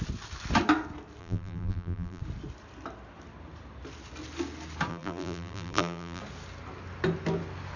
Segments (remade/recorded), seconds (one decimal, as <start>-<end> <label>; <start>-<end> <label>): 0.0-1.2 recorded; 1.2-2.2 remade; 2.2-4.9 recorded; 4.9-6.2 remade; 6.2-7.8 recorded

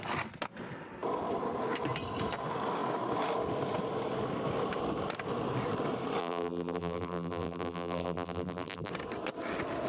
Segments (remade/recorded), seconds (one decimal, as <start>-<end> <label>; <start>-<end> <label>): 0.0-6.2 recorded; 6.2-8.9 remade; 8.9-9.9 recorded

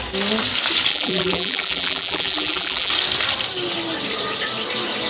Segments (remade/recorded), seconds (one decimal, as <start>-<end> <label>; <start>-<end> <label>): 0.0-0.9 recorded; 0.9-2.9 remade; 2.9-5.1 recorded